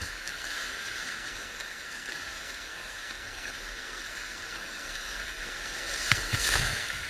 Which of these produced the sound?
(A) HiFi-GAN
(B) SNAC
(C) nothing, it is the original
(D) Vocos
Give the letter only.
B